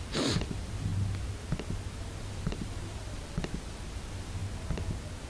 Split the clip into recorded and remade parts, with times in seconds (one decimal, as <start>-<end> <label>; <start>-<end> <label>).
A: 0.0-0.9 remade; 0.9-2.2 recorded; 2.2-4.4 remade; 4.4-5.3 recorded